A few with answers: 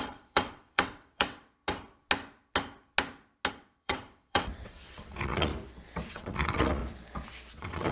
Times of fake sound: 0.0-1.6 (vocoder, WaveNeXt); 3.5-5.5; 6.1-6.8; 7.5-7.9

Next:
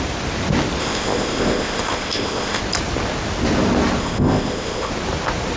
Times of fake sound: 0.8-2.6 (codec, ZipCodec); 4.0-4.9

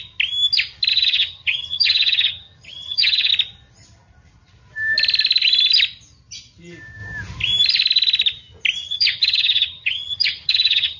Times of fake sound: 0.9-3.3 (vocoder, HiFi-GAN); 8.8-11.0

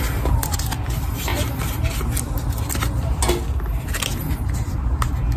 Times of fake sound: none